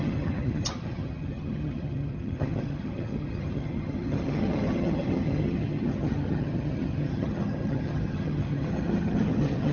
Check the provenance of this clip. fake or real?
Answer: fake